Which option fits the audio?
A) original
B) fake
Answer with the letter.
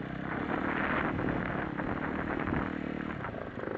A